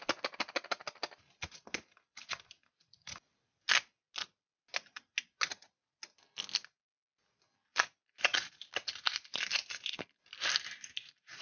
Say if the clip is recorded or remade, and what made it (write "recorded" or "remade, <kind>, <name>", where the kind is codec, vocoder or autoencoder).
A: recorded